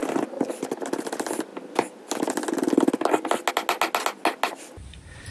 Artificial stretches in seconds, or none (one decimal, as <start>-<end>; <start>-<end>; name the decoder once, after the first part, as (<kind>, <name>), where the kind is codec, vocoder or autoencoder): none